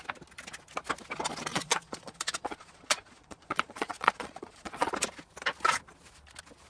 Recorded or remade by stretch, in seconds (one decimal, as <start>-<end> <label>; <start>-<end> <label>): 0.0-1.5 recorded; 1.5-4.9 remade; 4.9-6.7 recorded